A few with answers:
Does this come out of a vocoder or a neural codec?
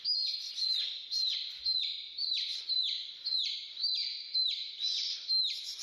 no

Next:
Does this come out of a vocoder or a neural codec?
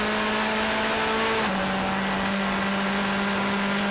no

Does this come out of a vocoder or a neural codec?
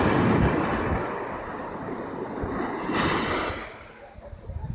no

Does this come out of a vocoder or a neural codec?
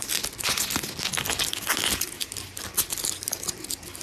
no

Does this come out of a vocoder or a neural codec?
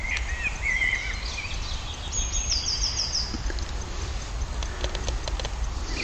no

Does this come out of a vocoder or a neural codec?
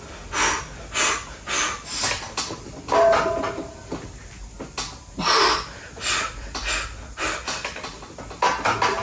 no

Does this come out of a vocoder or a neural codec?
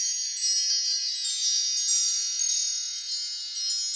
no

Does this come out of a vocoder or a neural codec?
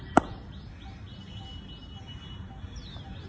no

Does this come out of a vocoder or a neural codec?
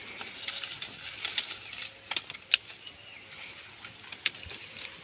no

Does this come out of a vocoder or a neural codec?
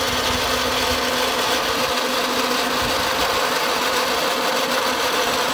no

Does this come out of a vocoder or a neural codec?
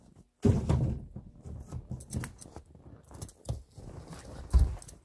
no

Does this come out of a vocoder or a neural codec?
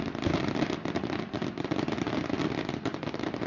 no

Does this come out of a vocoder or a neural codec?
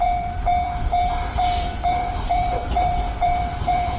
yes